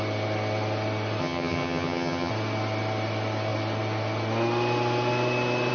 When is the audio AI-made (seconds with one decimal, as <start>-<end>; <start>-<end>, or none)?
1.2-2.3